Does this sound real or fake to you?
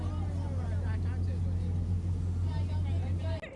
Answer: real